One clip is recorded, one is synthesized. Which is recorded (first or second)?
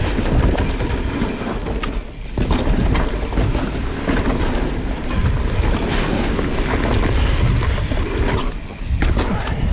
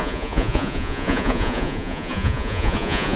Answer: first